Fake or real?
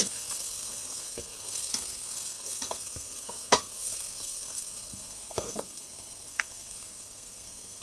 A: fake